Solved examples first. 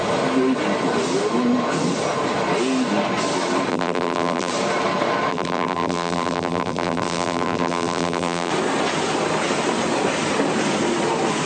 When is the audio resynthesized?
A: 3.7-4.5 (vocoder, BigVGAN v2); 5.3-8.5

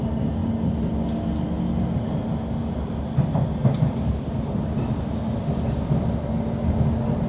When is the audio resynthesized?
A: none

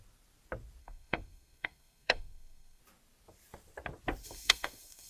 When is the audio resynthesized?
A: 0.8-2.8 (codec, SNAC); 4.2-5.1